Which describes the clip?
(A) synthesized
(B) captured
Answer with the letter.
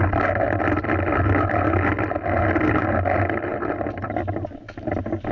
B